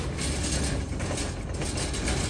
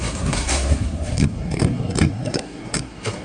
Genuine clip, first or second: first